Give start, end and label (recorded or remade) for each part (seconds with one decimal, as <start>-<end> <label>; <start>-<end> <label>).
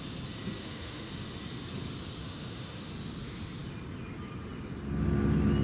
0.0-0.6 recorded; 0.6-1.1 remade; 1.1-2.2 recorded; 2.2-2.9 remade; 2.9-5.6 recorded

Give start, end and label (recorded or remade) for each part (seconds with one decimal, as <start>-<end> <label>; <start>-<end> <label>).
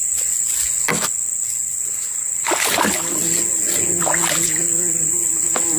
0.0-5.8 recorded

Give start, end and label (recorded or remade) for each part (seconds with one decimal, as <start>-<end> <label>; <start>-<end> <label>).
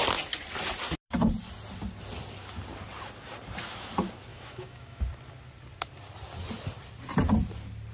0.0-4.3 recorded; 4.3-5.0 remade; 5.0-7.9 recorded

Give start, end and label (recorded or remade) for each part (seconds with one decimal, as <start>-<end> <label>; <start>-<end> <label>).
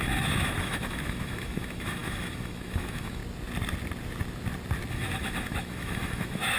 0.0-3.2 remade; 3.2-4.9 recorded; 4.9-6.6 remade